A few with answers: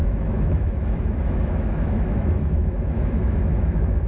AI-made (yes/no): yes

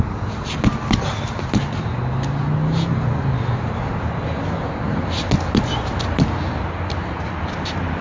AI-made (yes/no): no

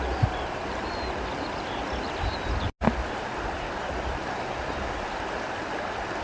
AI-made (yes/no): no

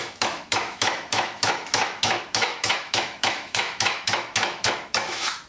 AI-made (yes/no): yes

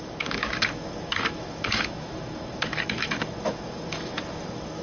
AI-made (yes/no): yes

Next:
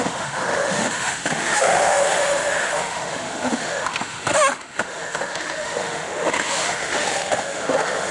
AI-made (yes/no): yes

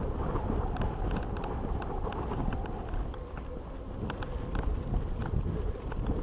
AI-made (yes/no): no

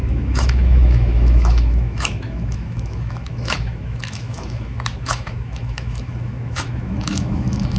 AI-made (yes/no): yes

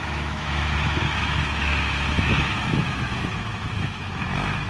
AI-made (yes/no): yes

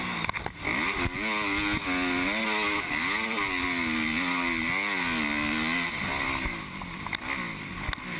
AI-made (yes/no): no